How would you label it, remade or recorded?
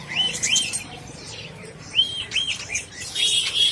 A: remade